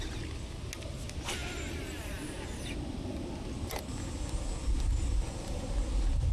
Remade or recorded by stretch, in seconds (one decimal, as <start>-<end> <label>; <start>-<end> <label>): 0.0-6.3 recorded